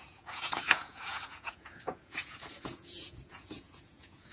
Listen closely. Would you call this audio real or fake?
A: fake